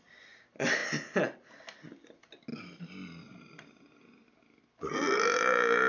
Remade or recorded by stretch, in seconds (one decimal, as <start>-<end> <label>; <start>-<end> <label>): 0.0-5.9 recorded